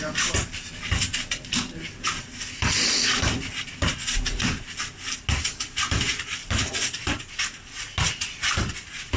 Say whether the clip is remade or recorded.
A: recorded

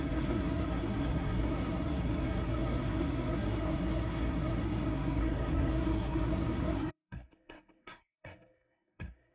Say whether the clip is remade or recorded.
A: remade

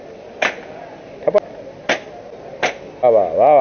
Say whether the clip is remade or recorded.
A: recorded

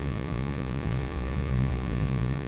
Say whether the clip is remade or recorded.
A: remade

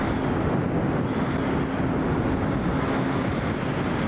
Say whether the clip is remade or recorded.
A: recorded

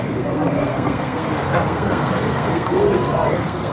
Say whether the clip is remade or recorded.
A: remade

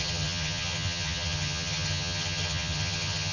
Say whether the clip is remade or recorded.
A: remade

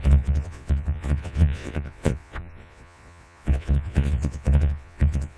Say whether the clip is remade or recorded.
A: remade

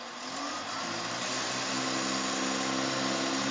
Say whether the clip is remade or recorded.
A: recorded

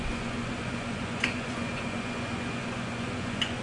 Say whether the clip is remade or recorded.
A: remade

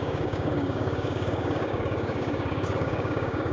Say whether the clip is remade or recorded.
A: remade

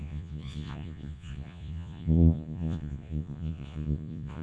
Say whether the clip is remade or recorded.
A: remade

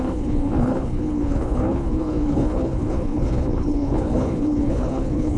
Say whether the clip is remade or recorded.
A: remade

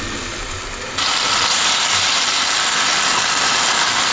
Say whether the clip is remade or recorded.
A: recorded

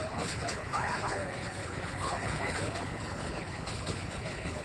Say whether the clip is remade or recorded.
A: remade